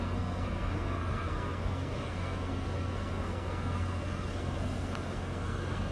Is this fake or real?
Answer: fake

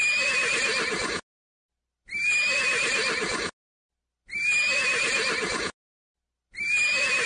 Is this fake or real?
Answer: real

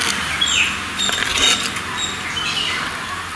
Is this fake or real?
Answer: real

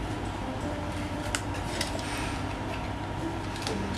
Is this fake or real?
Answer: real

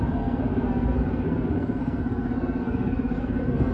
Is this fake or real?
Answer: fake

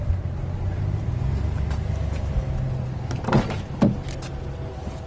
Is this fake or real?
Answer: real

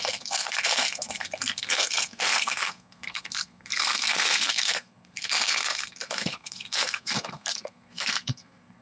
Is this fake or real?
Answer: fake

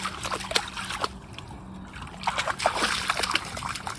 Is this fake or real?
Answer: real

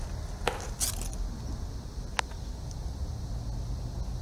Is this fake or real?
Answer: real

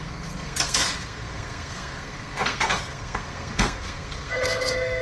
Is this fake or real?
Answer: fake